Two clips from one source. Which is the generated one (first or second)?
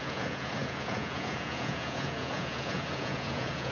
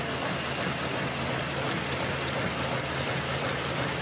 first